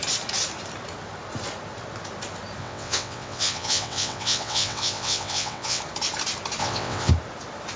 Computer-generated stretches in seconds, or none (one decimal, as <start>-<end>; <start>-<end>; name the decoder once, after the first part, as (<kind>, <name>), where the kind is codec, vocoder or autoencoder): 2.6-5.8 (vocoder, WaveNeXt); 6.6-7.1